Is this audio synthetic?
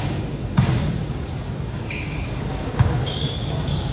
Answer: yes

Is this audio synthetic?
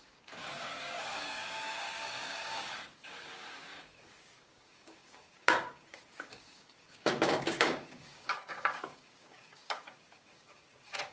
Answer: yes